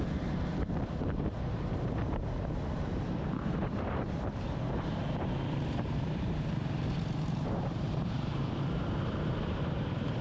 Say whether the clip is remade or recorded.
remade